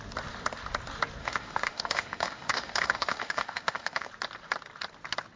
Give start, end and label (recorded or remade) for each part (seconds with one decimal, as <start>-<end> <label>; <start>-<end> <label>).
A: 0.0-1.2 recorded; 1.2-4.1 remade; 4.1-5.4 recorded